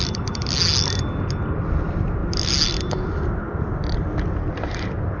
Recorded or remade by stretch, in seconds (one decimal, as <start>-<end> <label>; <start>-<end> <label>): 0.0-5.2 recorded